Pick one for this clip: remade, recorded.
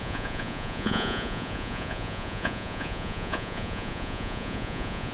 remade